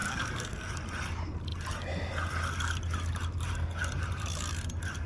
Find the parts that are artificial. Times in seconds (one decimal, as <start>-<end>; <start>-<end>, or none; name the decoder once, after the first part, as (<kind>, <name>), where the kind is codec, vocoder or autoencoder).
0.0-0.7 (codec, SNAC)